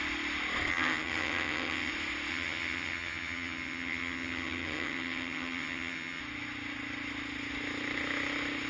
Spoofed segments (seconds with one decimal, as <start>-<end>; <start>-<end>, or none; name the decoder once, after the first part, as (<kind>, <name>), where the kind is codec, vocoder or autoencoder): 0.7-1.9 (vocoder, HiFi-GAN); 2.3-6.2